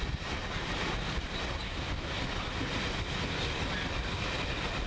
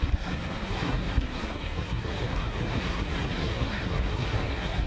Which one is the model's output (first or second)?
second